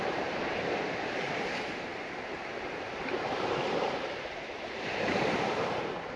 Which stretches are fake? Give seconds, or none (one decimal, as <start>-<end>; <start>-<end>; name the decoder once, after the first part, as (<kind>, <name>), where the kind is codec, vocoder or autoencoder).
0.0-6.2 (vocoder, BigVGAN v2)